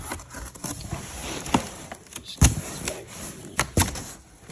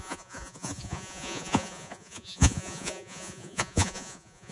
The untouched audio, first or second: first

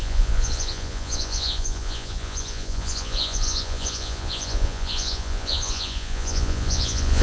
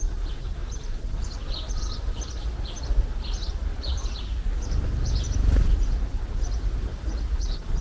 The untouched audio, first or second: second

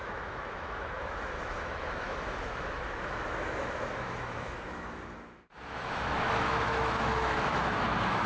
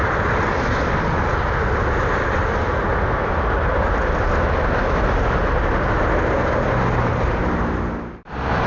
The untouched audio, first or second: second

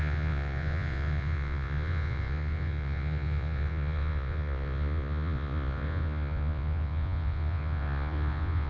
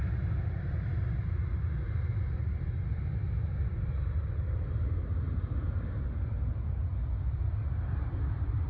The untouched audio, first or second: second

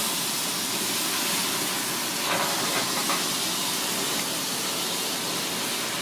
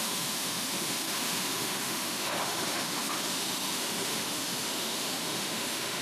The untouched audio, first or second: first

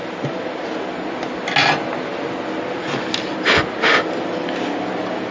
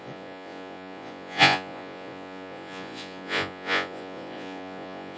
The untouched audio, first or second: first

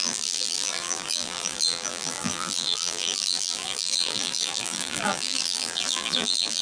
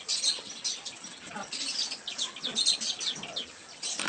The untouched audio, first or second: second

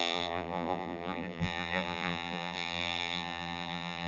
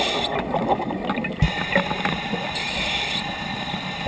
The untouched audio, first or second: second